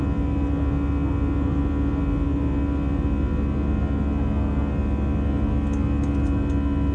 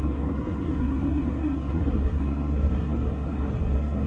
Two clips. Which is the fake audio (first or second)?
second